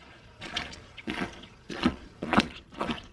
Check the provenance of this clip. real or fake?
fake